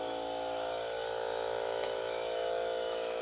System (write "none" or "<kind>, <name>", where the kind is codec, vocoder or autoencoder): autoencoder, DAC-VAE